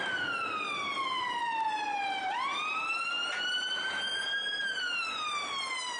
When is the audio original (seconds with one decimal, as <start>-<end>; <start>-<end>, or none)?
0.0-6.0